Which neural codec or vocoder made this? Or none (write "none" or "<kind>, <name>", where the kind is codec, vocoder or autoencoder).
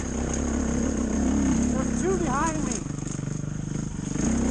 none